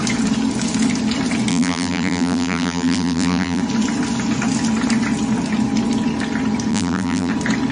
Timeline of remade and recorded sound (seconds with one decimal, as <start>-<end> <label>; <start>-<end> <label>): 0.0-1.5 recorded; 1.5-3.6 remade; 3.6-6.7 recorded; 6.7-7.3 remade; 7.3-7.7 recorded